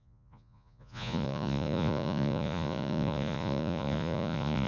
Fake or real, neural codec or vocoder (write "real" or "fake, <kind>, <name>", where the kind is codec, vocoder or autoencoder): fake, vocoder, Vocos